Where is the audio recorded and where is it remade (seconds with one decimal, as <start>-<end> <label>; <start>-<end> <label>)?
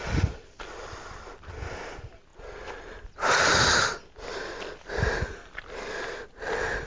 0.0-6.9 recorded